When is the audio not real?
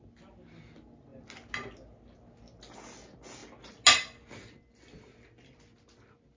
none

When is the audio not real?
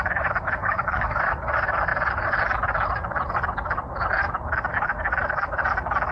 0.6-1.2 (codec, DAC)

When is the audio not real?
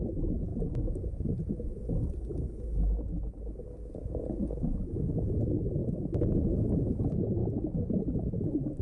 0.5-1.4 (vocoder, BigVGAN v2); 2.3-2.8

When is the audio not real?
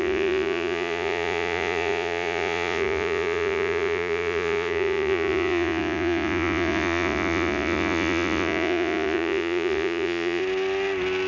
0.0-10.4 (vocoder, Vocos)